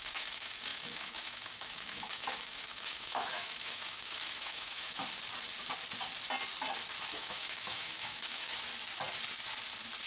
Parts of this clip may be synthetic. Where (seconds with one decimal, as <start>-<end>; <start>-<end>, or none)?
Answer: 0.0-5.0; 7.1-8.7